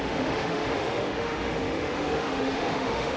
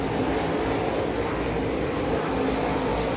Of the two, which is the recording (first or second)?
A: second